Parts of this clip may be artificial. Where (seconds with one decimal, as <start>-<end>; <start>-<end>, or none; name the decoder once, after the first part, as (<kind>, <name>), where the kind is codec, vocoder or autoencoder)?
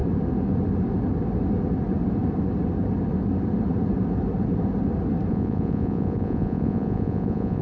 5.3-7.6 (vocoder, Vocos)